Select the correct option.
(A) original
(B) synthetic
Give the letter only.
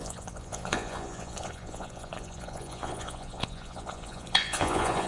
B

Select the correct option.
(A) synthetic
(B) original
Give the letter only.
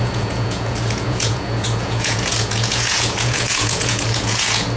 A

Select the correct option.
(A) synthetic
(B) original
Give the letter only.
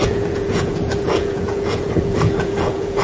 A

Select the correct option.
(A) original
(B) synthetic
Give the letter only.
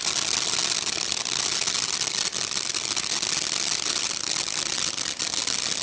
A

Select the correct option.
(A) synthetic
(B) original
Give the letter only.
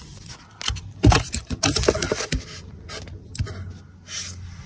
B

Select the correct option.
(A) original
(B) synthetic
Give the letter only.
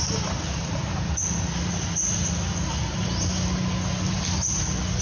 A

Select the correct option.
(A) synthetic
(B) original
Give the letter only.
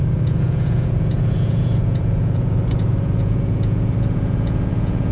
A